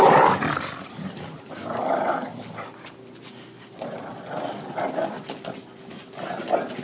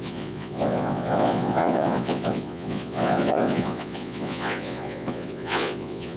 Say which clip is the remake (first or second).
second